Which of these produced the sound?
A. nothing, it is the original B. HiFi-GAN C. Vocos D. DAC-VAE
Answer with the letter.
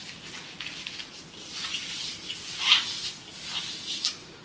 A